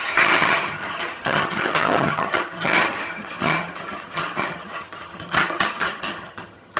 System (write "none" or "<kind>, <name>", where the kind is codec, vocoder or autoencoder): vocoder, HiFi-GAN